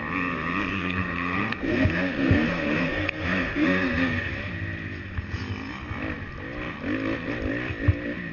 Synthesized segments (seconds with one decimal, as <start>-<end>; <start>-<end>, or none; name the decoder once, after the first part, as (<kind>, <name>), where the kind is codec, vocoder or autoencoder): 0.7-4.3 (codec, SNAC)